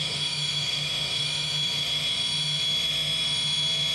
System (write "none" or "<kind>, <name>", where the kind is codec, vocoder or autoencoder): autoencoder, DAC-VAE